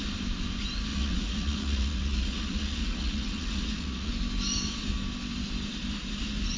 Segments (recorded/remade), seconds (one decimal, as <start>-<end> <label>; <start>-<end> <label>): 0.0-0.9 recorded; 0.9-4.1 remade; 4.1-6.6 recorded